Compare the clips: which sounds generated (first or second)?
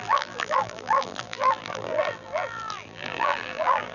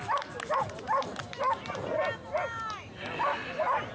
first